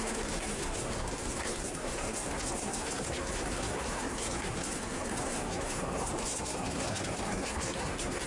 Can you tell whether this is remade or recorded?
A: remade